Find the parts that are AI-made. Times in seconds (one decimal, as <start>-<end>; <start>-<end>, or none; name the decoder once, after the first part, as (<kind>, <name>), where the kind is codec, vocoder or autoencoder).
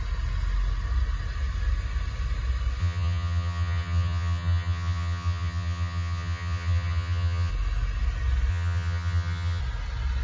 2.8-7.5 (vocoder, HiFi-GAN); 8.5-9.6